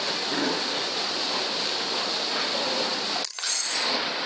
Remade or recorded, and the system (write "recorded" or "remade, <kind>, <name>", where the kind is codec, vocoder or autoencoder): recorded